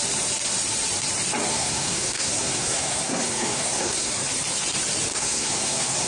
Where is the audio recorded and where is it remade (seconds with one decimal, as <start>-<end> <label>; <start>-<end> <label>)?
0.0-1.5 recorded; 1.5-4.1 remade; 4.1-5.1 recorded; 5.1-6.1 remade